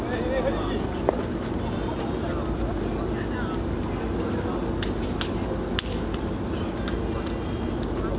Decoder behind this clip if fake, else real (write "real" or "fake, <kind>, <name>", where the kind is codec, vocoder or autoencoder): real